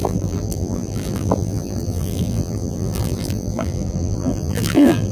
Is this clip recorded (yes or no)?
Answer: no